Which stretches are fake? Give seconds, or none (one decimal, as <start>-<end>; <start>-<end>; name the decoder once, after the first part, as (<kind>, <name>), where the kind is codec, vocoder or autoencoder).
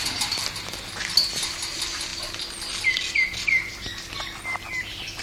none